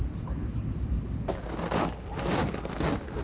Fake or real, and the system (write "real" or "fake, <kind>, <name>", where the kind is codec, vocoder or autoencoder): real